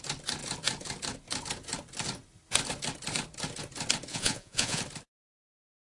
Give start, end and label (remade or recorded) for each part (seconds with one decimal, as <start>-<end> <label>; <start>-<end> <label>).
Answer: 0.0-4.1 recorded; 4.1-4.8 remade; 4.8-5.9 recorded